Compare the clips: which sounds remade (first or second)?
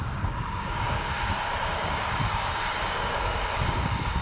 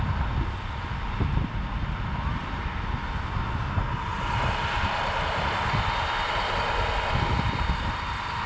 first